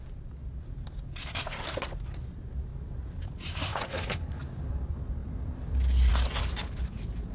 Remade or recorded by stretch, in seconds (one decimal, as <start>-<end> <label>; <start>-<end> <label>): 0.0-3.7 recorded; 3.7-4.4 remade; 4.4-7.3 recorded